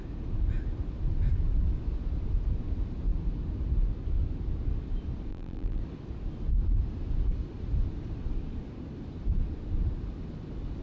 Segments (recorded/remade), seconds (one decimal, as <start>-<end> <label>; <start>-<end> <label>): 0.0-5.3 recorded; 5.3-5.8 remade; 5.8-10.8 recorded